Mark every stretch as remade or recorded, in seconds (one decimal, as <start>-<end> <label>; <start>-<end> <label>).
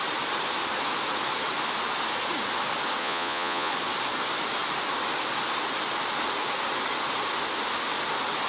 0.0-3.0 recorded; 3.0-3.7 remade; 3.7-8.5 recorded